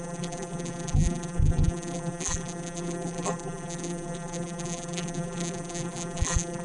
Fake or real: fake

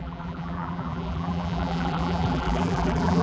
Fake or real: fake